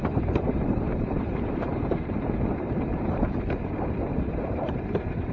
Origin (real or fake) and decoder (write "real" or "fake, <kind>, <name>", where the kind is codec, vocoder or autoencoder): fake, vocoder, BigVGAN v2